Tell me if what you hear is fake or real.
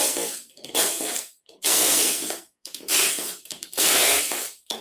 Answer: fake